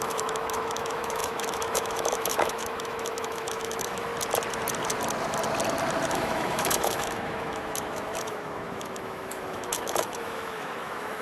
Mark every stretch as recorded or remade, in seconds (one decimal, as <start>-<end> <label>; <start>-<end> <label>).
0.0-4.1 remade; 4.1-6.1 recorded; 6.1-11.2 remade

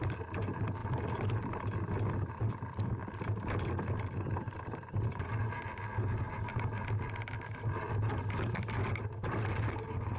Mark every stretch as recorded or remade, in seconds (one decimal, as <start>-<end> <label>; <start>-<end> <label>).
0.0-10.2 recorded

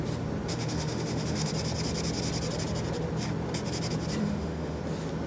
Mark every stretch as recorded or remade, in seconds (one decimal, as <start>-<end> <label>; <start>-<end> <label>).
0.0-0.5 recorded; 0.5-1.5 remade; 1.5-4.2 recorded; 4.2-4.8 remade; 4.8-5.3 recorded

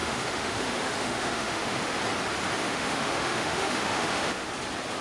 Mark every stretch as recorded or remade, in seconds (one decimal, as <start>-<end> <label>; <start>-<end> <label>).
0.0-2.0 remade; 2.0-2.6 recorded; 2.6-4.5 remade; 4.5-5.0 recorded